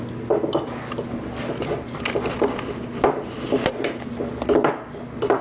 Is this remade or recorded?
recorded